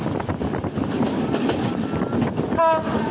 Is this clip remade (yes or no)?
no